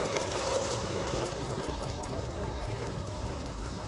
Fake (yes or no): yes